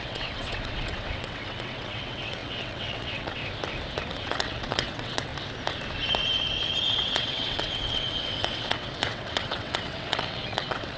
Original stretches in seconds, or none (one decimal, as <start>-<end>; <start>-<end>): 3.4-4.1; 5.3-6.9